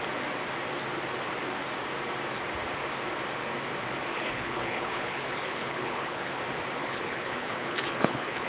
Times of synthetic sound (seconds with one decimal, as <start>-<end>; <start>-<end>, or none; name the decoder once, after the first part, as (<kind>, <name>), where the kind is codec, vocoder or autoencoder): 4.1-6.3 (codec, HILCodec); 6.8-8.5